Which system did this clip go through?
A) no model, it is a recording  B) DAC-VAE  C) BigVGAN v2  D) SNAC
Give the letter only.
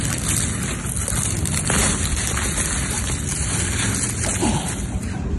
A